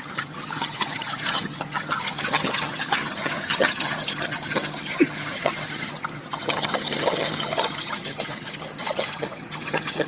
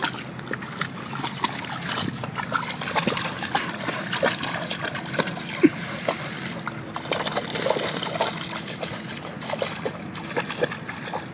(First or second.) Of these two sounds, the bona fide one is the second